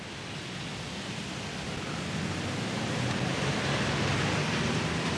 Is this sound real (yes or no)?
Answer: yes